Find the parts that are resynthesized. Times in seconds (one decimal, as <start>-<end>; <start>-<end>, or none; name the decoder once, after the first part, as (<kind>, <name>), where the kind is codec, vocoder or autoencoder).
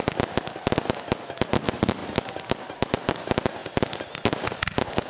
none